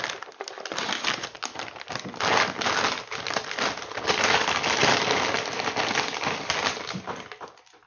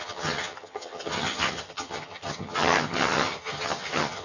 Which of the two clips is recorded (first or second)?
first